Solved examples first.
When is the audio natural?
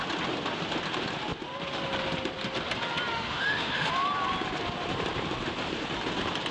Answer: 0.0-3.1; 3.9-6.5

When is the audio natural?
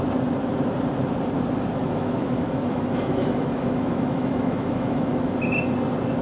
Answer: 0.0-1.8; 5.3-6.2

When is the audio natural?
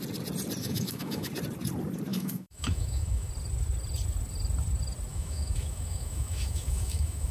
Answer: 0.0-0.6; 1.3-2.1; 3.3-5.1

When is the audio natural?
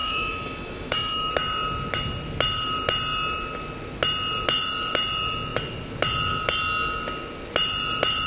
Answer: 1.3-8.3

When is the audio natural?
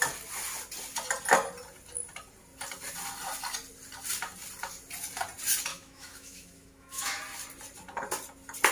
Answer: 0.0-5.7; 7.2-8.7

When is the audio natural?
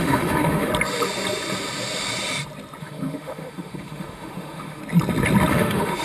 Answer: 0.7-2.8; 4.8-5.5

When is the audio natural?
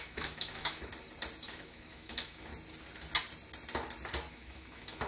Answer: 0.9-1.5; 2.5-4.3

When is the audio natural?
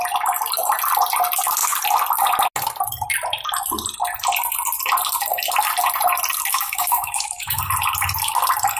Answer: 0.0-6.5; 7.6-8.8